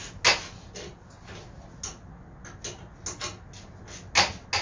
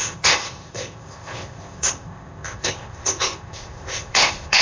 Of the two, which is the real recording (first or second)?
first